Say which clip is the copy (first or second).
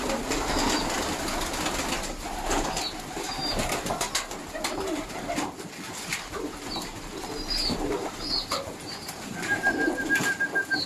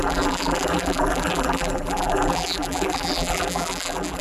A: second